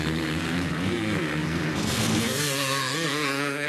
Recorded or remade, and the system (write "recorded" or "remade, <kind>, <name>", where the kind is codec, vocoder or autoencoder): remade, codec, SNAC